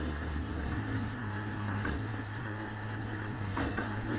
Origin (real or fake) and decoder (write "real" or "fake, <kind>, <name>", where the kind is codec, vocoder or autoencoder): fake, codec, SNAC